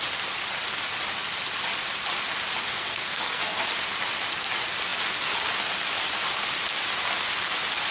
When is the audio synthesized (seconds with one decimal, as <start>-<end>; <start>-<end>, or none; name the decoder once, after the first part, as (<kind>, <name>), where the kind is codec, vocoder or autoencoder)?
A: 2.7-3.6 (codec, SNAC)